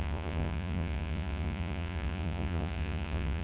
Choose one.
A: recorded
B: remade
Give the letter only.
B